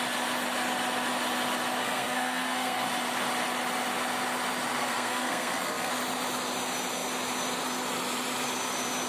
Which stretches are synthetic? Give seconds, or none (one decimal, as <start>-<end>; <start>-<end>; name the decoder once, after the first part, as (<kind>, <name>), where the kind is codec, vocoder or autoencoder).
1.8-2.9 (codec, SNAC); 4.8-5.9